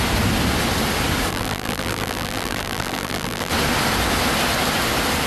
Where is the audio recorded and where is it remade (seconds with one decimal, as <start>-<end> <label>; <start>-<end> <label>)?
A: 0.0-1.3 recorded; 1.3-3.5 remade; 3.5-5.3 recorded